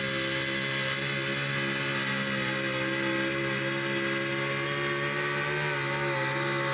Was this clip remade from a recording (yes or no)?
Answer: no